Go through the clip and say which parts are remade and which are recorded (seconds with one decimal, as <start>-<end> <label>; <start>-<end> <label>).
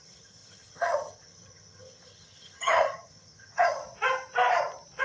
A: 0.0-3.8 remade; 3.8-5.0 recorded